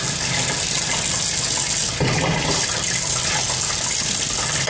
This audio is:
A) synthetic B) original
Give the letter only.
B